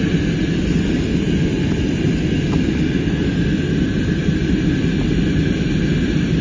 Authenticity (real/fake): real